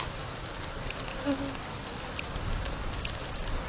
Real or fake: real